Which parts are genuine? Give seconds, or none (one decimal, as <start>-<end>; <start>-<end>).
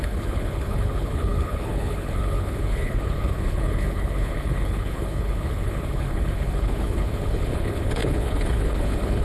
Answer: none